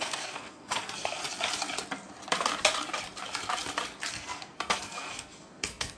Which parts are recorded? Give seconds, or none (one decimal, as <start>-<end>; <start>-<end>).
1.2-4.1